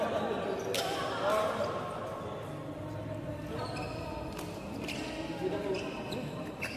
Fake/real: real